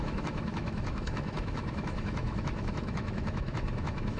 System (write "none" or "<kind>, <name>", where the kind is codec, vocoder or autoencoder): autoencoder, DAC-VAE